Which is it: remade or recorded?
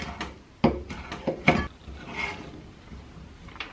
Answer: recorded